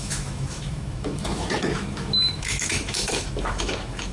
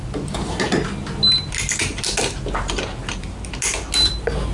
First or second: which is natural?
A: second